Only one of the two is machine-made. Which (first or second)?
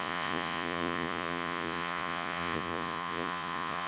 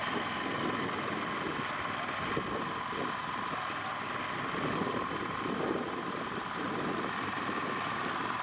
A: first